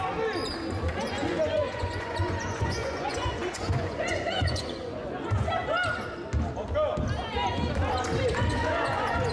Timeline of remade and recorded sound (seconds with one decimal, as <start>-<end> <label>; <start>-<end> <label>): 0.0-1.0 recorded; 1.0-5.5 remade; 5.5-8.6 recorded; 8.6-9.3 remade